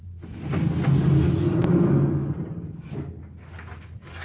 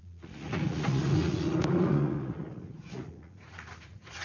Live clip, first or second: first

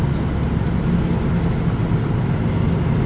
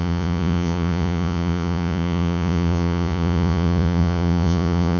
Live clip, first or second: first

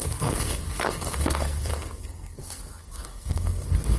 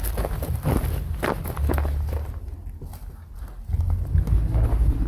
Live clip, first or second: second